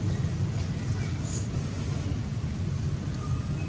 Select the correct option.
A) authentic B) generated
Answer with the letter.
A